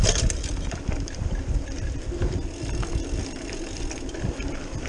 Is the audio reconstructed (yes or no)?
no